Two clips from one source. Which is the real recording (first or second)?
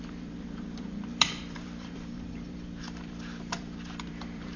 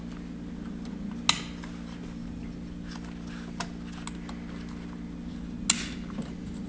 second